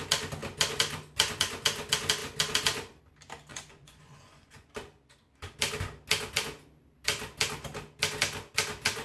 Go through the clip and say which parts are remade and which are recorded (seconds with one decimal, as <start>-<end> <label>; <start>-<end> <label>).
0.0-3.5 recorded; 3.5-4.7 remade; 4.7-9.0 recorded